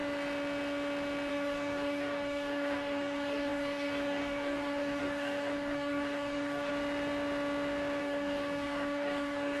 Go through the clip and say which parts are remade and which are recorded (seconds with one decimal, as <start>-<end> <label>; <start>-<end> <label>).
0.0-1.3 recorded; 1.3-6.7 remade; 6.7-8.0 recorded; 8.0-9.6 remade